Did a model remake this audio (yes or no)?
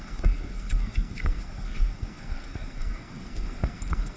yes